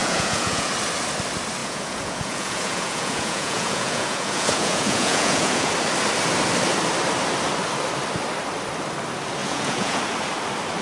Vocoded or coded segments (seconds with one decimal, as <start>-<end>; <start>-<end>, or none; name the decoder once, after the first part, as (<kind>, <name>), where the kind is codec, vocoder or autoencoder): 0.0-0.7 (vocoder, Vocos); 1.6-5.7; 9.4-10.0